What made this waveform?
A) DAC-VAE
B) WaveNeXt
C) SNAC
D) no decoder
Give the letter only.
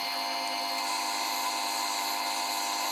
D